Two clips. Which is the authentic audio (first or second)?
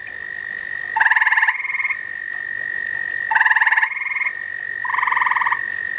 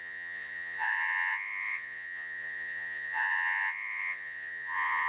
first